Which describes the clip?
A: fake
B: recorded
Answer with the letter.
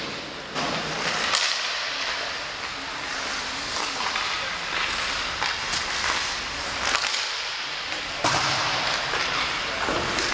B